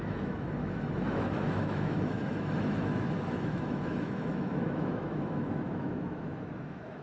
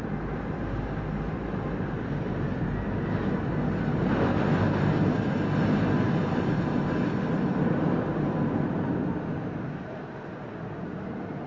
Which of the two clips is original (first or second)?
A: second